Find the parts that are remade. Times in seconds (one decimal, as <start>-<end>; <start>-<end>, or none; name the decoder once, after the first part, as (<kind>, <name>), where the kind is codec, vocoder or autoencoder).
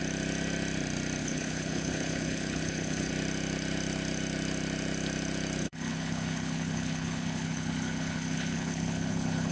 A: 1.2-3.1 (codec, HILCodec); 5.6-9.5